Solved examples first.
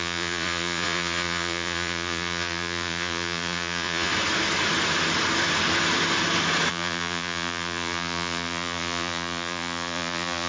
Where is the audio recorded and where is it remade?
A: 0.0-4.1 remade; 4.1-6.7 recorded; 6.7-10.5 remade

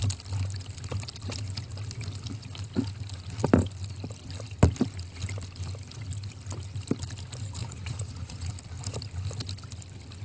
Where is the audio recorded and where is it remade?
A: 0.0-7.6 recorded; 7.6-8.5 remade; 8.5-10.2 recorded

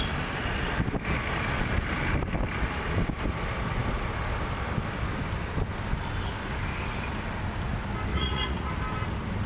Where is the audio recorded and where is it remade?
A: 0.0-8.1 recorded; 8.1-8.7 remade; 8.7-9.5 recorded

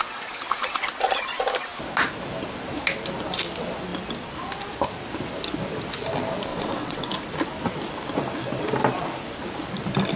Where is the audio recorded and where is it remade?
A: 0.0-6.5 recorded; 6.5-7.1 remade; 7.1-10.2 recorded

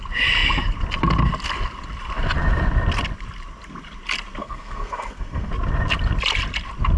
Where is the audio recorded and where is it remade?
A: 0.0-4.4 recorded; 4.4-5.5 remade; 5.5-7.0 recorded

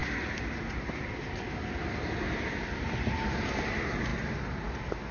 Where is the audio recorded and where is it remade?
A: 0.0-5.1 recorded

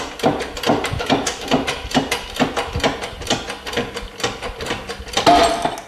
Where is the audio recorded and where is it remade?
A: 0.0-5.9 recorded